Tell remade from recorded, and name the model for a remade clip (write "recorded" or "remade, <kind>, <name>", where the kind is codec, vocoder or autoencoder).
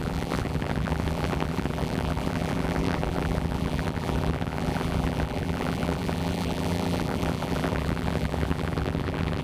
remade, vocoder, BigVGAN v2